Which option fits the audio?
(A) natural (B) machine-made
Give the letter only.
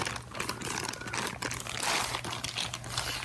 A